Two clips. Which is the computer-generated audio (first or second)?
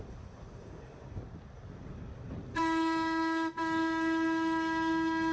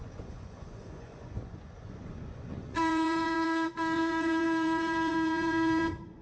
second